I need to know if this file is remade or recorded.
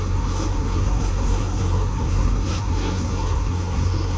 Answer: remade